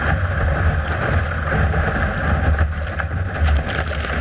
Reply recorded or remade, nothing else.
recorded